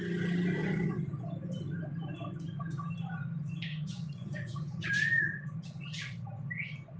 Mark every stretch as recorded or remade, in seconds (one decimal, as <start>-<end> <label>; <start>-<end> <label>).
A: 0.0-0.6 recorded; 0.6-1.2 remade; 1.2-3.7 recorded; 3.7-4.9 remade; 4.9-7.0 recorded